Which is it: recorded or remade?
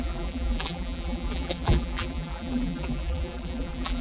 remade